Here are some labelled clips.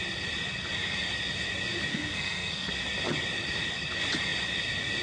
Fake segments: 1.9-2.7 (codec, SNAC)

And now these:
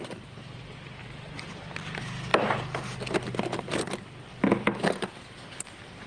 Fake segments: none

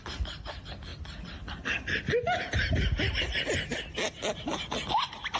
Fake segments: none

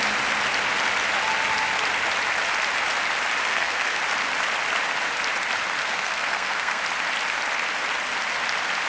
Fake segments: 3.5-4.0 (codec, SNAC); 5.8-6.8

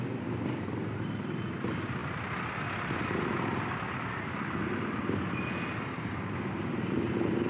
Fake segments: none